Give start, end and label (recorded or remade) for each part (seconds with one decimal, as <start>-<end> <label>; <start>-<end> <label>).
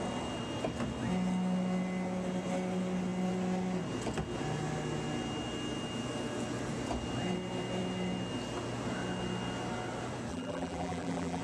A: 0.0-10.3 recorded; 10.3-11.4 remade